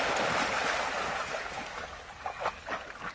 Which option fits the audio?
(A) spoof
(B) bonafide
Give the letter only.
B